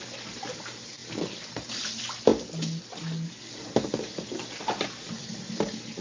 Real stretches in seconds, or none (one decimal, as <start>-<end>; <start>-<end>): 0.0-6.0